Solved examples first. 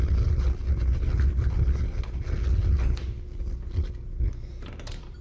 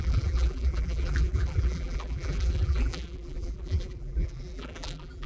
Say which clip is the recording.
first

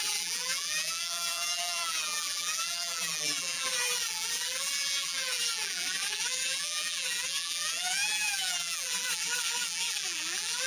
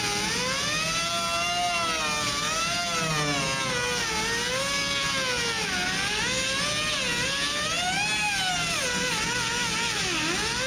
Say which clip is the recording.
second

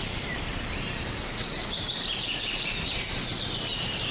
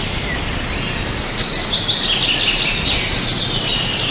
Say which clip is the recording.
second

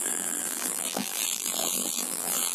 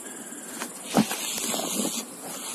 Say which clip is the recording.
second